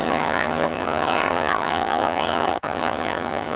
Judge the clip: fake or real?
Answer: fake